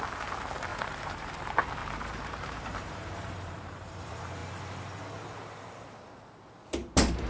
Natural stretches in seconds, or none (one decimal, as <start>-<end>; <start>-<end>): 0.0-0.7; 1.3-1.8; 4.0-7.3